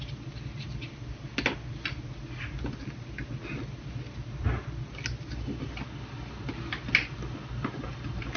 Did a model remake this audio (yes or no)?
no